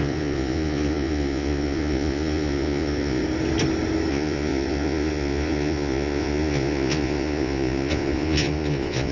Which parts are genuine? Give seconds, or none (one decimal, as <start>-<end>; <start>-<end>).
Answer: 3.2-4.1